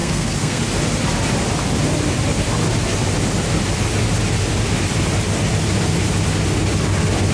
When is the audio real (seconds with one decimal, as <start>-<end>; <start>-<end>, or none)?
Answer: 0.6-7.3